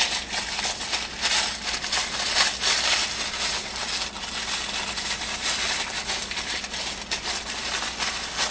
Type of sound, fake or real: real